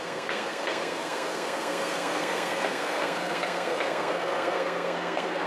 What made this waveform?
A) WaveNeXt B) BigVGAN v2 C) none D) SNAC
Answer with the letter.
D